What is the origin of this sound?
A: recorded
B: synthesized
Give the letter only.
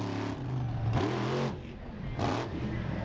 A